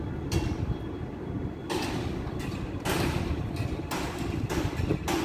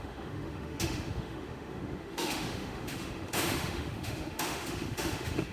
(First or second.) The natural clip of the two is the first